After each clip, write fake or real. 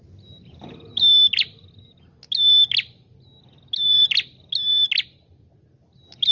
real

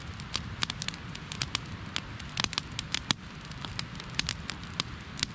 fake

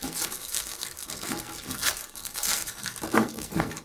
fake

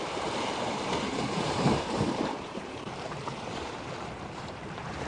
fake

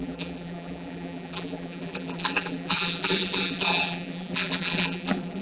fake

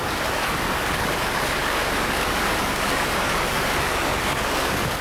fake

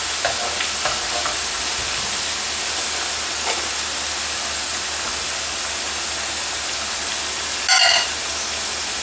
real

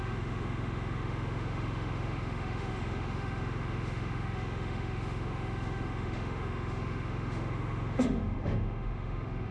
fake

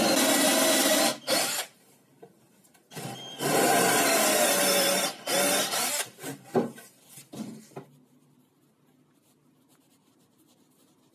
real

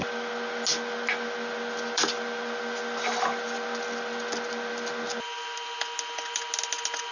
real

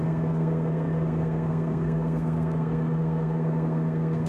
fake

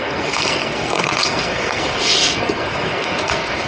fake